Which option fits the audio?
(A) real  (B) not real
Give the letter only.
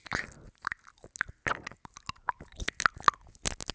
A